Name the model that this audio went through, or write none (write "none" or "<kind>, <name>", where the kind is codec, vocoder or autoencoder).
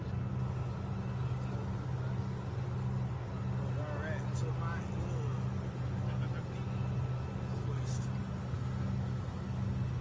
none